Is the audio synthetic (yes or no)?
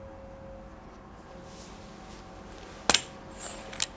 no